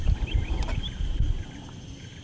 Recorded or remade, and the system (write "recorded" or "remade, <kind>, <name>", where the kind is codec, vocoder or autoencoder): recorded